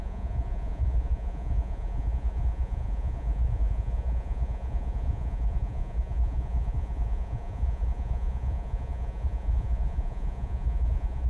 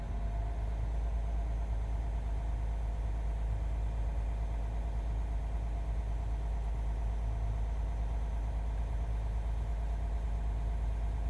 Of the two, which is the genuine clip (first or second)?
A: second